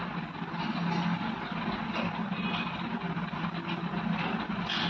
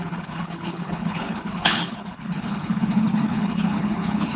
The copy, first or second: second